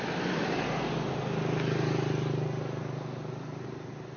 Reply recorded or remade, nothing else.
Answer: recorded